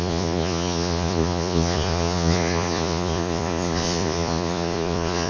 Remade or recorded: remade